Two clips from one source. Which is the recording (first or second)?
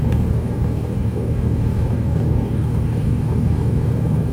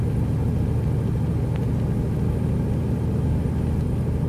second